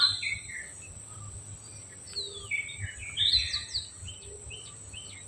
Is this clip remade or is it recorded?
recorded